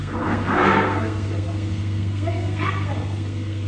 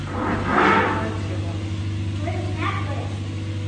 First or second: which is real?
second